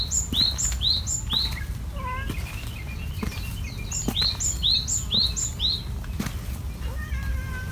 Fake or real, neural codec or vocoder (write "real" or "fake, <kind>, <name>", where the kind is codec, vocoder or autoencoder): real